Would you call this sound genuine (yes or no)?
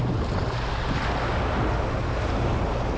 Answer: yes